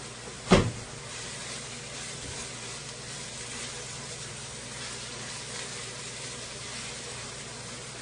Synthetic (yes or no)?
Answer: no